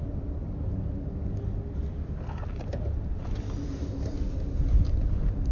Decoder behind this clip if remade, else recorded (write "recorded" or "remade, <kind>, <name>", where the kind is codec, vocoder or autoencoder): recorded